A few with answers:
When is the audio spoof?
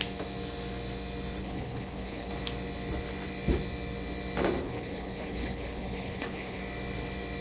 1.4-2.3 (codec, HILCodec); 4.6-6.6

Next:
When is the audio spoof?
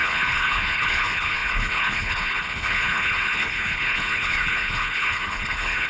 0.0-5.9 (codec, HILCodec)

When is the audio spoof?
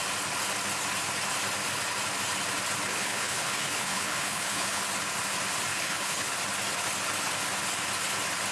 2.9-4.8 (codec, HILCodec); 5.7-6.3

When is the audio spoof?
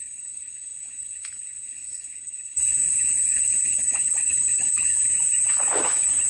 0.0-5.1 (codec, HILCodec)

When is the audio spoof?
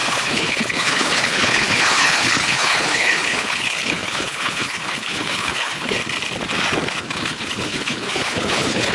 0.0-6.0 (codec, HILCodec); 7.0-8.9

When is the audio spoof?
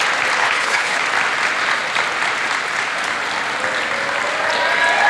0.4-1.0 (codec, HILCodec)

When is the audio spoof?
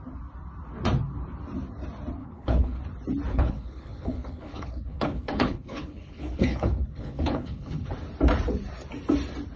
2.2-2.8 (codec, HILCodec); 3.3-7.9